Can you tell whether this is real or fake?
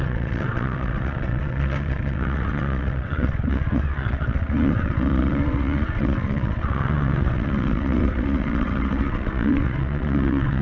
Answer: fake